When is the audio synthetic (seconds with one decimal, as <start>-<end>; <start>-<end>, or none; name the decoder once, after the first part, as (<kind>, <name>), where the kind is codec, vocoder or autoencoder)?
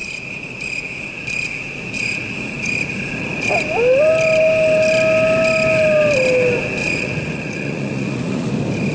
0.0-3.5 (vocoder, Vocos); 6.8-8.5